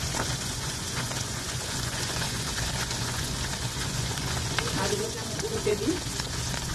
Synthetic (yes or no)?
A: yes